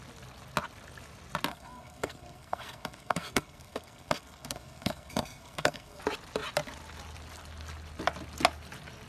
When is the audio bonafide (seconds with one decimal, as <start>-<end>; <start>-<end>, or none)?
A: 0.0-1.5; 6.0-9.1